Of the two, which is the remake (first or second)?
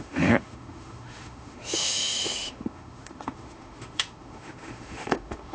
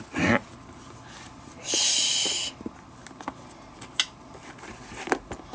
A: first